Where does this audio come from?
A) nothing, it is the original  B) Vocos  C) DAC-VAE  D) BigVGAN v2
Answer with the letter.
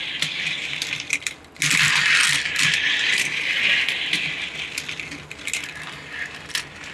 A